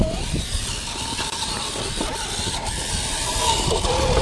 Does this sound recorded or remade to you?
recorded